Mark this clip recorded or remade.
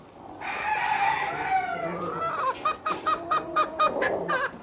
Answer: recorded